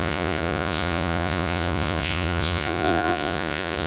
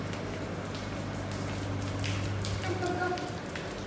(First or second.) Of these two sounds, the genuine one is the second